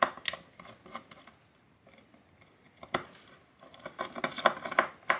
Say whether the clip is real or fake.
real